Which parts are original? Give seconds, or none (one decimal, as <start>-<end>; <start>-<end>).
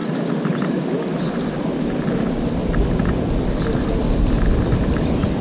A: 0.6-5.4